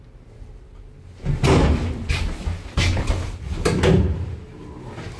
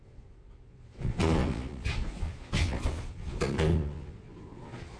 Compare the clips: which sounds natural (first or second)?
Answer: first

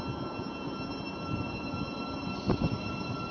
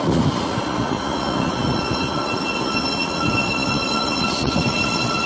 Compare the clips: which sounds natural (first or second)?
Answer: first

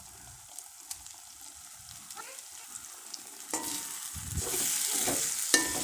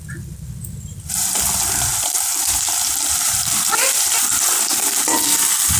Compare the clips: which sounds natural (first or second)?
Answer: first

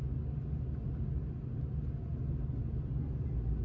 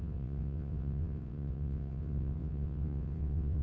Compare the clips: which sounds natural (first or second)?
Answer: first